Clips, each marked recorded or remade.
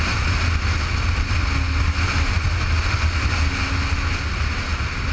recorded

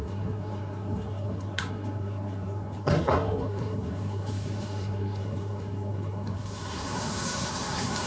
remade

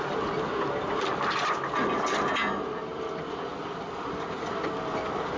recorded